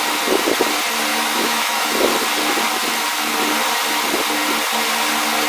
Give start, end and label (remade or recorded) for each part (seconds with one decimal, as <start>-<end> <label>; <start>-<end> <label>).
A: 0.0-1.1 recorded; 1.1-1.9 remade; 1.9-5.5 recorded